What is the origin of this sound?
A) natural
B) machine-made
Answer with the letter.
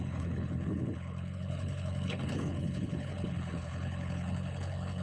B